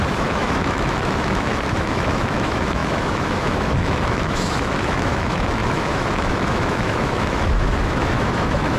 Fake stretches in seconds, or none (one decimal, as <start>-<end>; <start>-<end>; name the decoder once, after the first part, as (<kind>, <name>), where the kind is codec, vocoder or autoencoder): 0.0-8.8 (autoencoder, DAC-VAE)